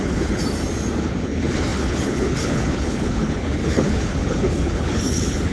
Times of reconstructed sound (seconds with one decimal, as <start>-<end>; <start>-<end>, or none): 0.0-0.4; 1.0-5.5

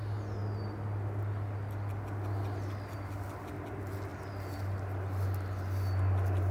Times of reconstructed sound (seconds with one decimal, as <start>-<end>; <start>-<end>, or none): none

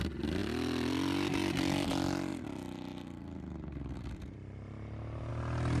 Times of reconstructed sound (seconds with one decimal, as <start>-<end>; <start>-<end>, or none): 2.3-5.3

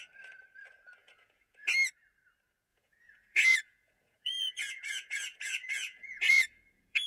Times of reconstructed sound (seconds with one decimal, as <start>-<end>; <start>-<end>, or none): 1.0-1.7; 2.7-7.1

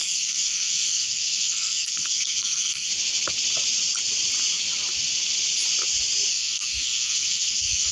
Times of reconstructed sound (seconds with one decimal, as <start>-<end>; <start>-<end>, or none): 0.0-2.9; 6.3-7.9